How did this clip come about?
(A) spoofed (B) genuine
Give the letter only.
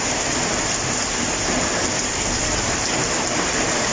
B